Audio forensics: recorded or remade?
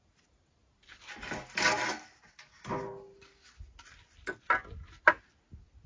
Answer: recorded